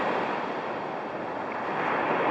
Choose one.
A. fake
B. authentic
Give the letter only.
B